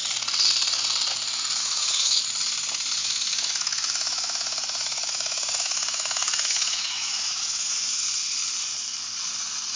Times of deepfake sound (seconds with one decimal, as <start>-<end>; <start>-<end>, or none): 1.6-2.2; 3.0-8.0